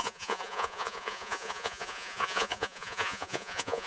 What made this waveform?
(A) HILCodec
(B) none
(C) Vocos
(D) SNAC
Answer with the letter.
C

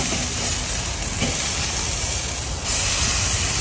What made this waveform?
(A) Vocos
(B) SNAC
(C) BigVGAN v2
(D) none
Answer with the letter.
D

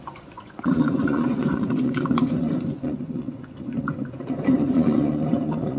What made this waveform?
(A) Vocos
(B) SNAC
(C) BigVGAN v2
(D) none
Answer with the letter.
A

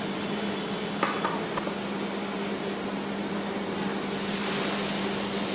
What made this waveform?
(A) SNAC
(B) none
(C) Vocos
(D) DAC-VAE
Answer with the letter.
B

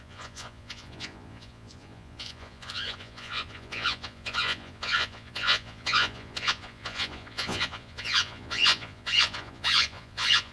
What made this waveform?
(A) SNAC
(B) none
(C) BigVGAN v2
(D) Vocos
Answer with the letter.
D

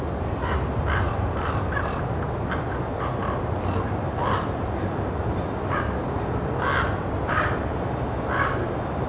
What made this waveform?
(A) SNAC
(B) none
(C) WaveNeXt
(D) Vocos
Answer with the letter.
B